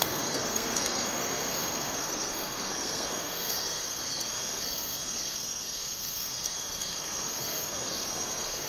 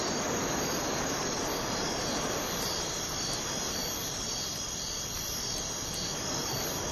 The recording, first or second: second